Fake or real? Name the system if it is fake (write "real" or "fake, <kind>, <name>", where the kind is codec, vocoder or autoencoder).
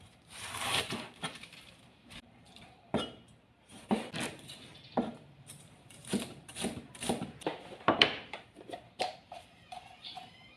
fake, vocoder, BigVGAN v2